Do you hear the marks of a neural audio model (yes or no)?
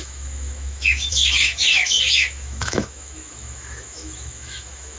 yes